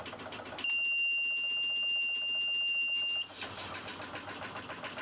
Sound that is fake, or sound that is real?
real